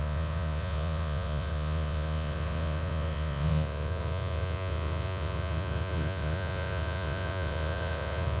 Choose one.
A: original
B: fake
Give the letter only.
B